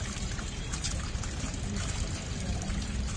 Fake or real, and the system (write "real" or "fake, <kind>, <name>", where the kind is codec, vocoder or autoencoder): fake, vocoder, BigVGAN v2